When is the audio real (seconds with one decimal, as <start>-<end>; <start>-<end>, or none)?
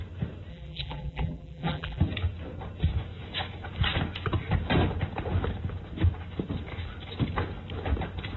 0.0-0.5; 2.0-8.4